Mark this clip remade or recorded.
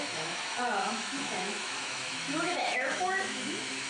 remade